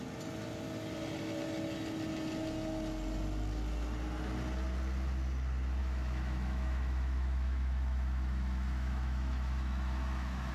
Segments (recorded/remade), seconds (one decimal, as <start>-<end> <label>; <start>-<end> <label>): 0.0-5.8 recorded; 5.8-10.5 remade